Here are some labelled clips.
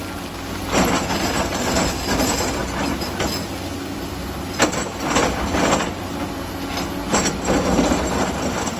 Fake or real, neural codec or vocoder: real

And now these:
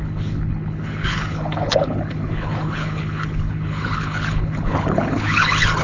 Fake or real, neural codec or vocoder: fake, codec, HILCodec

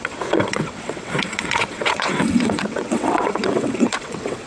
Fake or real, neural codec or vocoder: fake, vocoder, WaveNeXt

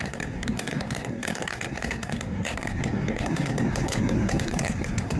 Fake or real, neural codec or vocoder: fake, codec, SNAC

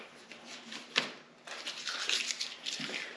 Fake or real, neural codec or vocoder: real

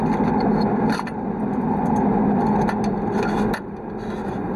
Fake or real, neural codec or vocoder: real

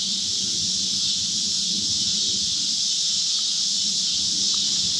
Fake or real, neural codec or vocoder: real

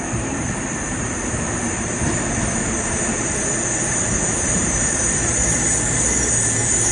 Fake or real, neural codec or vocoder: fake, vocoder, BigVGAN v2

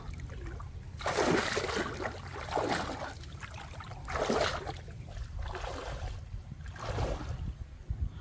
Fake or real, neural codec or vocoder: real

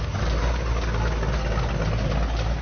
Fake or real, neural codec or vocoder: real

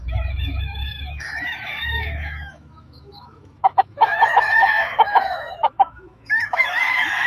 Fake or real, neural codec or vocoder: fake, autoencoder, DAC-VAE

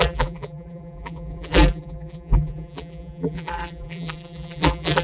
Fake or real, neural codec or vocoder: fake, vocoder, BigVGAN v2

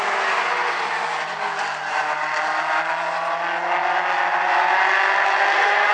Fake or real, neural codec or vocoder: real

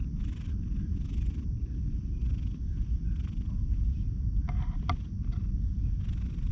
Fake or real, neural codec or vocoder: real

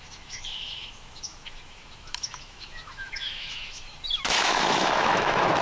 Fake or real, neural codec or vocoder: fake, autoencoder, DAC-VAE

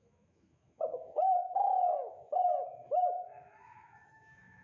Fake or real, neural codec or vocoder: fake, autoencoder, DAC-VAE